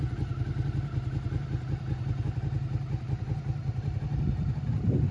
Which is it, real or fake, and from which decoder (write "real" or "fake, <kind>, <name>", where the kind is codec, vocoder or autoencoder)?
real